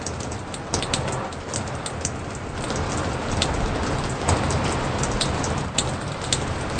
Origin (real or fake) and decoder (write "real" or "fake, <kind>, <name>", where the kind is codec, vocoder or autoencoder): real